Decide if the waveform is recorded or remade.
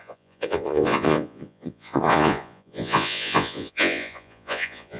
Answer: remade